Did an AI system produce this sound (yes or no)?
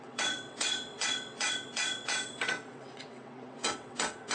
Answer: yes